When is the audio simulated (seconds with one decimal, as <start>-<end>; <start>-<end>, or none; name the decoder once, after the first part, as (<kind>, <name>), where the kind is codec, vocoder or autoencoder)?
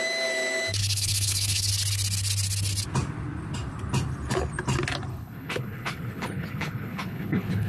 0.8-1.7 (codec, HILCodec); 5.1-7.7